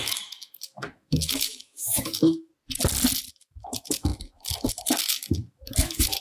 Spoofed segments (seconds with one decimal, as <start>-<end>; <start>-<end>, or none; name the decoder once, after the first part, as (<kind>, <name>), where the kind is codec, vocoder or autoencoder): 0.0-2.5 (autoencoder, DAC-VAE); 3.3-6.2